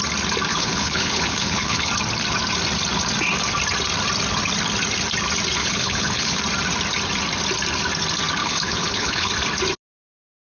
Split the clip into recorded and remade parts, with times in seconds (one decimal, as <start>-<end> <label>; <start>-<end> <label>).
0.0-0.5 recorded; 0.5-1.9 remade; 1.9-5.6 recorded; 5.6-6.4 remade; 6.4-8.4 recorded; 8.4-9.3 remade; 9.3-10.6 recorded